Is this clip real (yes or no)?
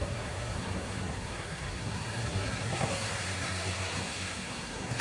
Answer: no